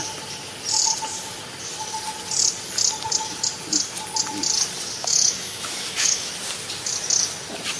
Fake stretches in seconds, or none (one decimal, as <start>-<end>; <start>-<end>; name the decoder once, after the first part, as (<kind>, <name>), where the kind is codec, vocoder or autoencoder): 5.0-6.3 (autoencoder, DAC-VAE)